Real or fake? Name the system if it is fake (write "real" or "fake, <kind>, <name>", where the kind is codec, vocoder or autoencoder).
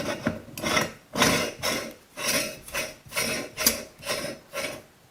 real